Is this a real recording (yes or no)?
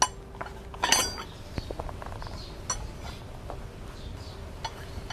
yes